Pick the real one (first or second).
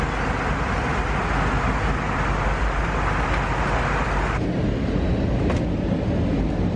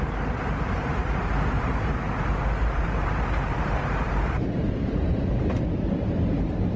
first